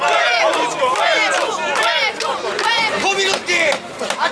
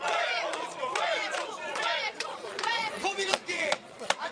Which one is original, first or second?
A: first